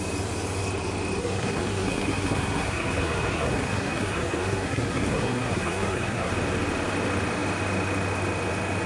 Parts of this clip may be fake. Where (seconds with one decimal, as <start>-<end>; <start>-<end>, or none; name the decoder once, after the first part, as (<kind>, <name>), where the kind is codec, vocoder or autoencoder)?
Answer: 1.2-6.3 (codec, SNAC)